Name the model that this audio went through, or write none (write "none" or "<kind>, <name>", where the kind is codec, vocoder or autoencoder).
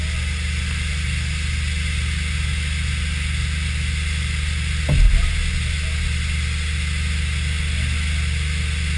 none